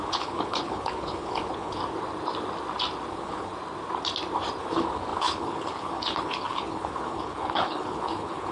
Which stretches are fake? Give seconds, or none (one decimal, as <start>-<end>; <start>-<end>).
0.0-1.8; 3.1-3.5; 4.6-8.5